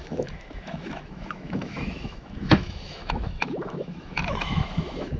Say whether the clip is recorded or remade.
remade